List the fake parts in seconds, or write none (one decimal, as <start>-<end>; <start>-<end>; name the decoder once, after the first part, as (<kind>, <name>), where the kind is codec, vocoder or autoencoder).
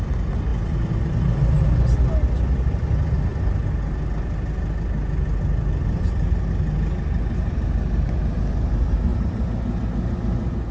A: none